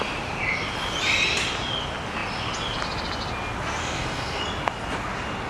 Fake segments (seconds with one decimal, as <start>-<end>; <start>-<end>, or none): 3.8-4.4